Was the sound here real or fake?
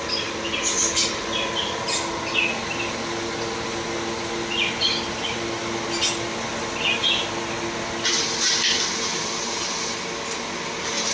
real